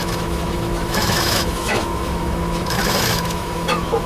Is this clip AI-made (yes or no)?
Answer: yes